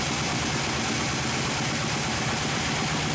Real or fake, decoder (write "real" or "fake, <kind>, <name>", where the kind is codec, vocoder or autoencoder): real